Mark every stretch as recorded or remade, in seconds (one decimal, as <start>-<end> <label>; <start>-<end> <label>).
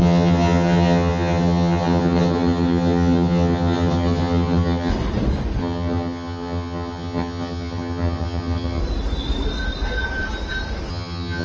0.0-4.9 remade; 4.9-5.6 recorded; 5.6-8.8 remade; 8.8-10.9 recorded; 10.9-11.4 remade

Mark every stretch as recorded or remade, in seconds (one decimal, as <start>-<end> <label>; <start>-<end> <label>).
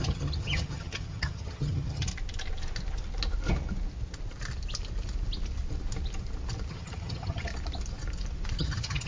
0.0-2.1 remade; 2.1-6.7 recorded; 6.7-7.5 remade; 7.5-8.6 recorded; 8.6-9.1 remade